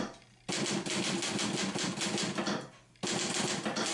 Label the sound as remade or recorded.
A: recorded